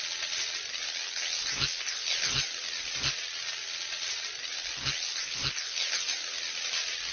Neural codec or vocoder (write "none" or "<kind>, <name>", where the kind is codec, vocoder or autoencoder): none